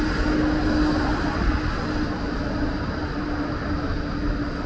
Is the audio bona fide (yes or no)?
yes